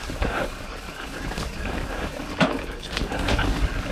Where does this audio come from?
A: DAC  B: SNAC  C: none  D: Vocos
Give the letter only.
A